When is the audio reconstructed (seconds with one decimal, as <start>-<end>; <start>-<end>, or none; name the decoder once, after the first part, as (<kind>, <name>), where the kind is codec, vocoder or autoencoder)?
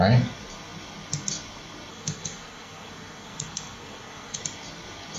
1.9-4.4 (codec, SNAC)